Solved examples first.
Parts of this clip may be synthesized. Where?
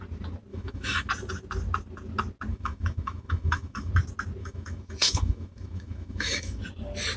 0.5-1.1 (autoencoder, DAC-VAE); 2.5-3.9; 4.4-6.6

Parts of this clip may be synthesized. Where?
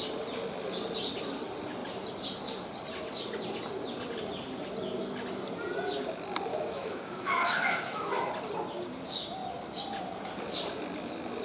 6.5-8.3 (autoencoder, DAC-VAE)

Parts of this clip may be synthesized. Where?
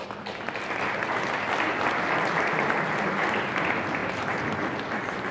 none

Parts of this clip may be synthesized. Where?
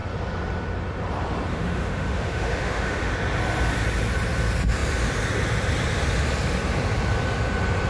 1.5-3.1 (autoencoder, DAC-VAE)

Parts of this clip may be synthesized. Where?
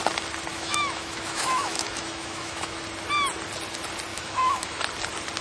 0.5-2.8 (autoencoder, DAC-VAE); 4.1-4.8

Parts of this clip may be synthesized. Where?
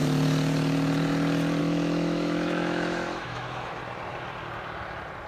1.6-3.8 (autoencoder, DAC-VAE)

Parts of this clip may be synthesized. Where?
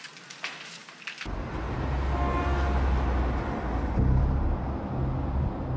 none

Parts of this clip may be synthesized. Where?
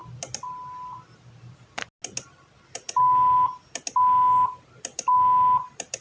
none